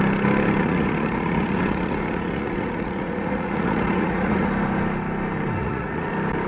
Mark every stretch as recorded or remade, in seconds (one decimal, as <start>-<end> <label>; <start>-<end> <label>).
0.0-0.6 recorded; 0.6-4.5 remade; 4.5-5.6 recorded; 5.6-6.1 remade; 6.1-6.5 recorded